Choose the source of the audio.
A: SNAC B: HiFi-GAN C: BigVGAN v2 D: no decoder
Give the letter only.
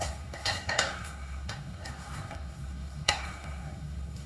A